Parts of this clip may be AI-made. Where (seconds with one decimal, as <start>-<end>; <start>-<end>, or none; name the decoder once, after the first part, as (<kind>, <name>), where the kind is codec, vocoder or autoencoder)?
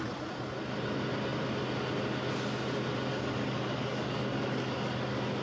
3.1-5.0 (codec, DAC)